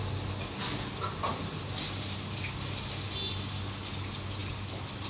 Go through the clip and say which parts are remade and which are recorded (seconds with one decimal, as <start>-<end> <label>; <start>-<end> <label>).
0.0-5.1 recorded